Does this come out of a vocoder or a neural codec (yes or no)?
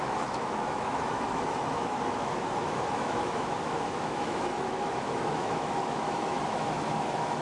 yes